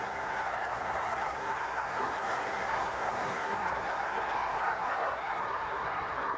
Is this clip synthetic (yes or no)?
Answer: yes